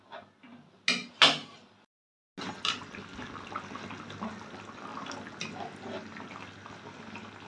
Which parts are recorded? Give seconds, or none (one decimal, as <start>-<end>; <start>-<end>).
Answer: 0.0-7.5